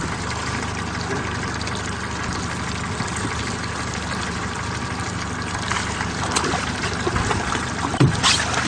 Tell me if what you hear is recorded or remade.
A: recorded